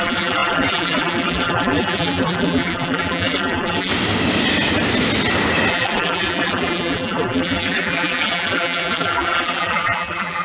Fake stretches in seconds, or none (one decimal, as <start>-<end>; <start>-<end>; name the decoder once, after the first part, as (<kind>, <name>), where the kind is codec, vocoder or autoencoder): 0.0-3.9 (vocoder, BigVGAN v2); 5.7-10.4